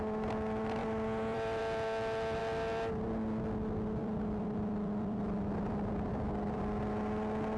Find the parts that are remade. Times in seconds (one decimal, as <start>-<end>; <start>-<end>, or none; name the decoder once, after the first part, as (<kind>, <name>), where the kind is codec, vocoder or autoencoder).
0.8-1.6 (vocoder, BigVGAN v2); 4.0-6.6